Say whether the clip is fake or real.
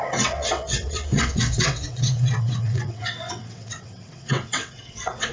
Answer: fake